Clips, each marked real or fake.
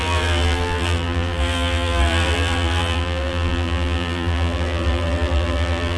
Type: fake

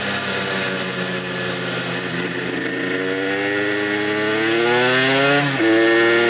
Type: real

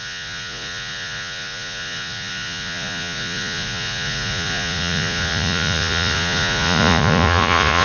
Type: fake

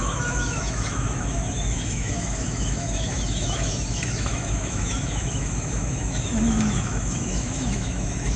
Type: fake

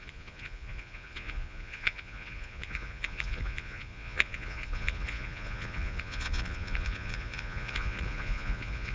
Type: fake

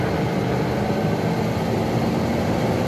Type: real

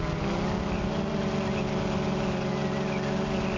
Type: real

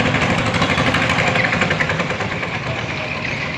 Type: real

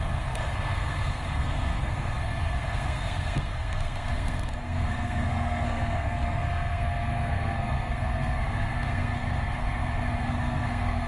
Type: fake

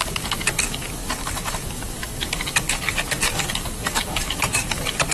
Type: fake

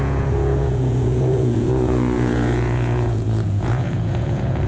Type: fake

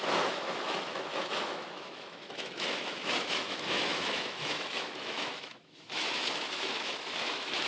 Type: fake